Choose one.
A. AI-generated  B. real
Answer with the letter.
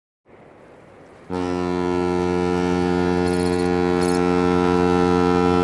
B